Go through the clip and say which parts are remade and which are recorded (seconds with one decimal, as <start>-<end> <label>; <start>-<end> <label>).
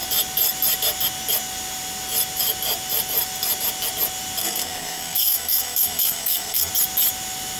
0.0-4.4 recorded; 4.4-6.7 remade; 6.7-7.6 recorded